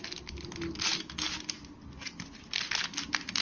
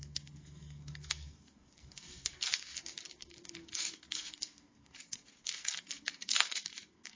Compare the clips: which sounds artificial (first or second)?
second